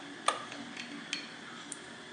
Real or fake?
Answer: real